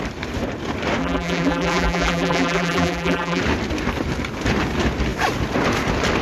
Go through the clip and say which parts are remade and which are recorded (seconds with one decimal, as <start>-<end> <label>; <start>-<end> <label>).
0.0-1.0 recorded; 1.0-3.4 remade; 3.4-6.2 recorded